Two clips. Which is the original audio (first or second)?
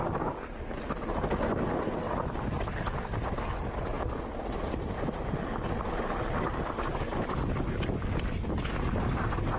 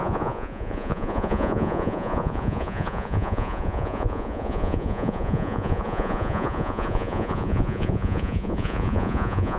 first